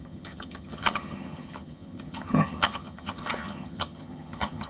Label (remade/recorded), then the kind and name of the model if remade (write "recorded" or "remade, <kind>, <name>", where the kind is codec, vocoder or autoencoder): remade, vocoder, HiFi-GAN